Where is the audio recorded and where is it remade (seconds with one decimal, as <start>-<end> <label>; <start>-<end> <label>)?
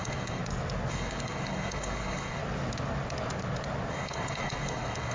0.0-0.4 remade; 0.4-0.9 recorded; 0.9-2.4 remade; 2.4-3.9 recorded; 3.9-5.1 remade